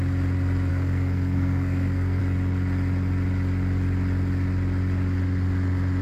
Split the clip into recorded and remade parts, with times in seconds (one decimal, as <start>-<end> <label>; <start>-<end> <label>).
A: 0.0-0.7 recorded; 0.7-2.2 remade; 2.2-6.0 recorded